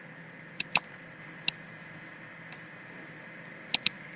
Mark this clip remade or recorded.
remade